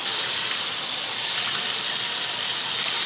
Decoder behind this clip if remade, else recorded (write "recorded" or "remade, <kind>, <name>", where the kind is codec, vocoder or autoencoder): recorded